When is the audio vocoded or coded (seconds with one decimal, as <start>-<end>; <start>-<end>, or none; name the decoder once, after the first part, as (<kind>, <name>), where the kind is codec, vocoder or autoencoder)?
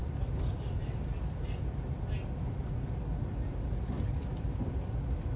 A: none